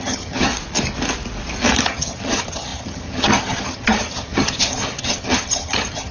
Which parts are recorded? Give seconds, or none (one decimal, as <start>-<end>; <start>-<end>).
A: 0.5-1.8